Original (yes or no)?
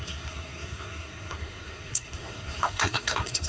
no